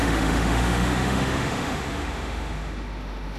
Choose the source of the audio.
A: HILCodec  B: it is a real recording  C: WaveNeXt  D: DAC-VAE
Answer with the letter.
D